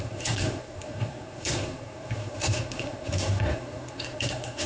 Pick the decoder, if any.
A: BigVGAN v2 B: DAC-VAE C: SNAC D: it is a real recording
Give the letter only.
C